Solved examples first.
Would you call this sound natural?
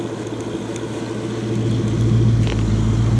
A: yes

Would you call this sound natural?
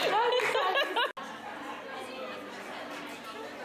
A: yes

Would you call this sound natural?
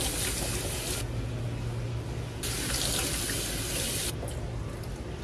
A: yes